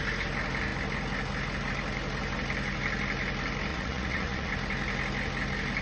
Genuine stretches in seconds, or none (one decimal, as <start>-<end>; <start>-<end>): 0.0-3.7; 4.5-5.8